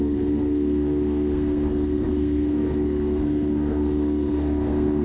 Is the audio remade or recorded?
remade